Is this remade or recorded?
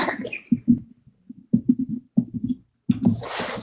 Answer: remade